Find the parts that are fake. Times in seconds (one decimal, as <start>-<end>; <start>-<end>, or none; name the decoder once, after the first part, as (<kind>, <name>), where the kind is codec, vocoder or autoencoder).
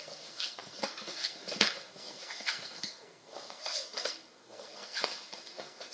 0.0-5.9 (codec, SNAC)